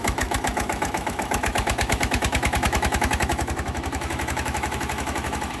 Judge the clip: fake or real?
fake